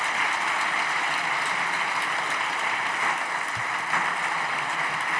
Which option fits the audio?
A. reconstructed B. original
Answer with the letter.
B